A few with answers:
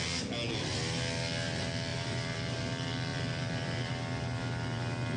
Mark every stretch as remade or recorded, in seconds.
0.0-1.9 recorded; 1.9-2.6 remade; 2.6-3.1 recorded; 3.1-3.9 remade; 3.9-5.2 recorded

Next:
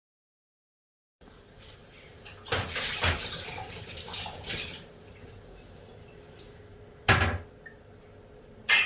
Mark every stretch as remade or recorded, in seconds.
0.0-0.9 recorded; 0.9-5.1 remade; 5.1-8.9 recorded

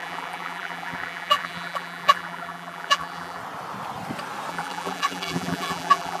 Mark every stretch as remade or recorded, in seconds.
0.0-3.4 remade; 3.4-4.5 recorded; 4.5-6.2 remade

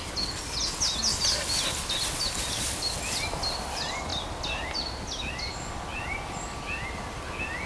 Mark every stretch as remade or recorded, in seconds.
0.0-7.7 recorded

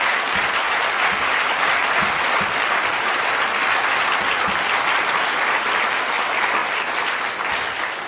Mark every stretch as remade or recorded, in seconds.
0.0-8.1 recorded

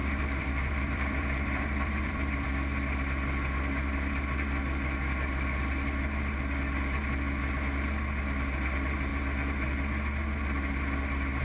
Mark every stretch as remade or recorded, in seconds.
0.0-2.5 remade; 2.5-11.4 recorded